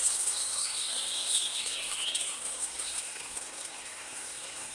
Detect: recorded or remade remade